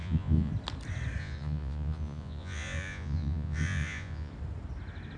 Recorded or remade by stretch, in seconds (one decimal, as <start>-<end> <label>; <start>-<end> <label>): 0.0-0.5 remade; 0.5-1.2 recorded; 1.2-4.3 remade; 4.3-5.2 recorded